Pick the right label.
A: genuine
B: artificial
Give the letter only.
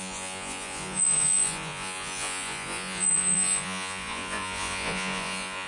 B